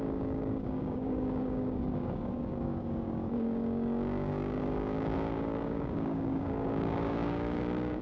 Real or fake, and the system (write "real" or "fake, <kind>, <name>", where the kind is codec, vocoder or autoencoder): fake, codec, DAC